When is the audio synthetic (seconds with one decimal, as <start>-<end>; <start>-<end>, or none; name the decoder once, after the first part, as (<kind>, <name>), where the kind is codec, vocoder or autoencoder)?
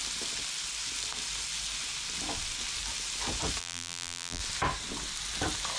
3.6-4.4 (vocoder, BigVGAN v2)